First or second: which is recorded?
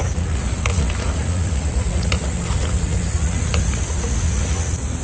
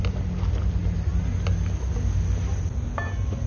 second